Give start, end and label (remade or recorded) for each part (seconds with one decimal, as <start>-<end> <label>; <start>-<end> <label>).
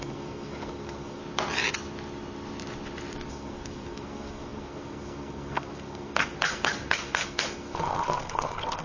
0.0-1.2 remade; 1.2-3.3 recorded; 3.3-8.8 remade